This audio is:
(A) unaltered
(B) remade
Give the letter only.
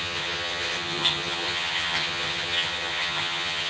B